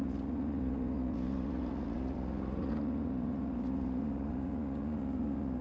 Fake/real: fake